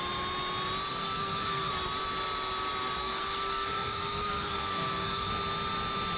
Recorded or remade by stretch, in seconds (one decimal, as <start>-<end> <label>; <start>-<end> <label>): 0.0-0.9 recorded; 0.9-1.7 remade; 1.7-3.0 recorded; 3.0-5.3 remade; 5.3-6.2 recorded